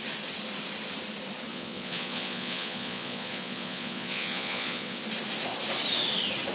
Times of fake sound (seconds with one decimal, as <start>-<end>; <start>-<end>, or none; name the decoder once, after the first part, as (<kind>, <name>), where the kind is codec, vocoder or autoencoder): 1.5-5.0 (vocoder, Vocos)